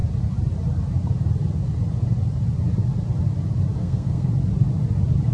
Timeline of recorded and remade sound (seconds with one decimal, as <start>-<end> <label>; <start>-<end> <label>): 0.0-3.8 recorded; 3.8-4.3 remade; 4.3-5.3 recorded